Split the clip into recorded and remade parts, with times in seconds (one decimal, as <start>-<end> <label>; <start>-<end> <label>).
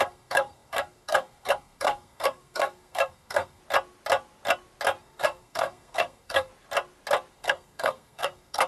0.0-3.6 remade; 3.6-5.0 recorded; 5.0-6.5 remade; 6.5-7.3 recorded; 7.3-8.7 remade